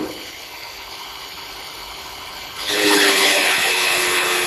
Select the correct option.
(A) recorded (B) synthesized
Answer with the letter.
B